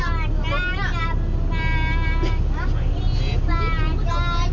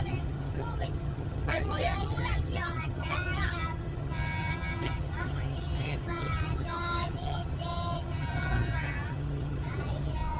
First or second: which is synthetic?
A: second